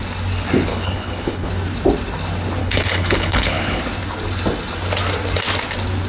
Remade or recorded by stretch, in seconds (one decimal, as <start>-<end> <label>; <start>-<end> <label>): 0.0-0.7 recorded; 0.7-1.5 remade; 1.5-2.6 recorded; 2.6-3.8 remade; 3.8-6.1 recorded